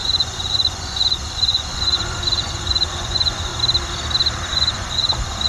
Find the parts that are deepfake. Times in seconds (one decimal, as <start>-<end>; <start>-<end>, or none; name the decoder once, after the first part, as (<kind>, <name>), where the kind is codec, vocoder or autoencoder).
0.0-3.5 (vocoder, Vocos); 4.5-5.5